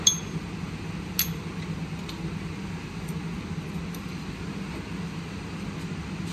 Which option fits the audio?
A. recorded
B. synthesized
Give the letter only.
A